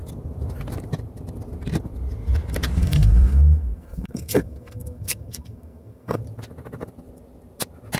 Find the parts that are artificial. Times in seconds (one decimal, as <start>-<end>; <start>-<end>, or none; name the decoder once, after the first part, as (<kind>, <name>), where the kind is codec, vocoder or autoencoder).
2.8-6.2 (codec, SNAC)